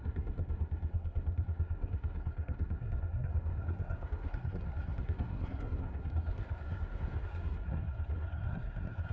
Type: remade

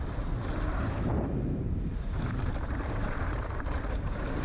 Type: remade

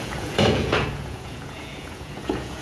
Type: remade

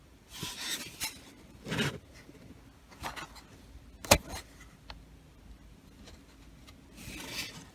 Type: recorded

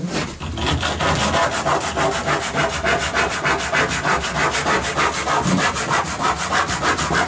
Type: recorded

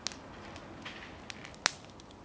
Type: recorded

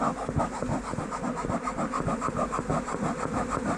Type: recorded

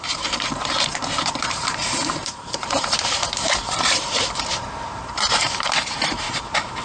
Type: remade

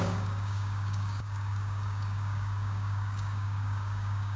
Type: remade